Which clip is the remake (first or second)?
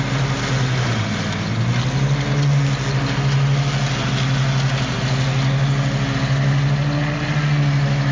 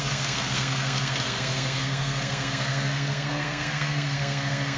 second